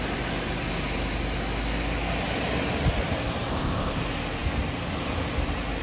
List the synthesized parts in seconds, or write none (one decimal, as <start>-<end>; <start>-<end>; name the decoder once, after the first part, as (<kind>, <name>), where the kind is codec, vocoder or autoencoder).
3.5-4.0 (codec, ZipCodec)